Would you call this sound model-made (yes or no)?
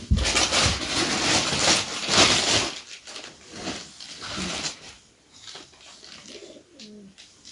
no